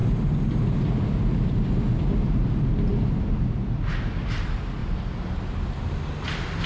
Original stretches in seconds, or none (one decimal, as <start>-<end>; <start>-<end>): 3.5-4.8; 5.4-6.7